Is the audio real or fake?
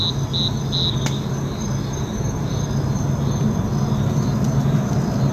real